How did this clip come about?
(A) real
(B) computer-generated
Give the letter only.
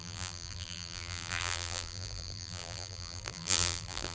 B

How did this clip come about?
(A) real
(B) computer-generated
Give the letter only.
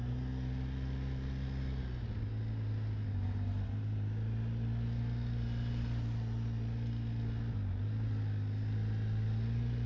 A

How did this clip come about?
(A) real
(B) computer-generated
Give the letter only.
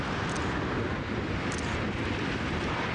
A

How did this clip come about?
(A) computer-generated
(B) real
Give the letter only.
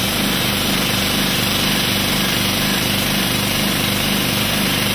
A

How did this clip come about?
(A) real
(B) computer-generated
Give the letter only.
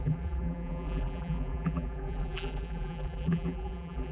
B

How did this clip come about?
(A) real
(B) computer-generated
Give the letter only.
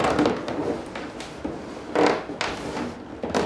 A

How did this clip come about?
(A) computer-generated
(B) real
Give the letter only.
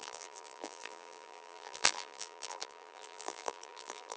A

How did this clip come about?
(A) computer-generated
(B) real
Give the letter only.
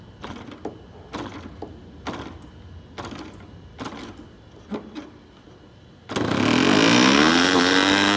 B